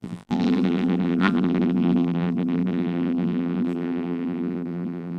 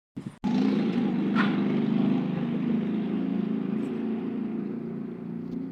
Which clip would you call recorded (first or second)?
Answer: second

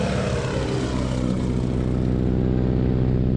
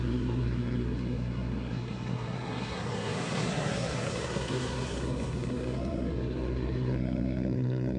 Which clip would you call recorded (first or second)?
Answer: first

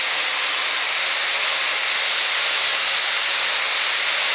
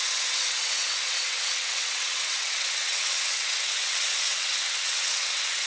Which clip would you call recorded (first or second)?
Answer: first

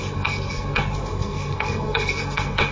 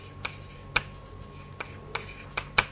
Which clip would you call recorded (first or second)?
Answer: second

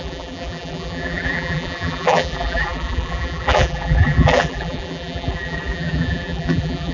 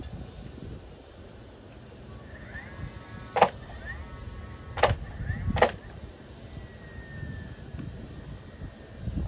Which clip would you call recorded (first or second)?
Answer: second